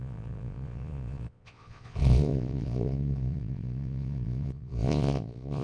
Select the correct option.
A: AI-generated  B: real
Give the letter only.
A